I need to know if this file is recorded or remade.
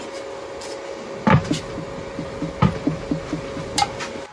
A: recorded